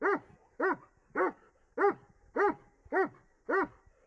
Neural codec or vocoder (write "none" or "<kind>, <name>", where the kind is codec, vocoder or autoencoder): none